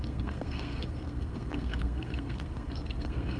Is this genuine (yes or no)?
no